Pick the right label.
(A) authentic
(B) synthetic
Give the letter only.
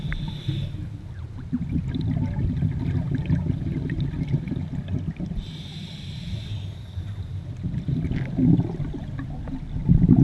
A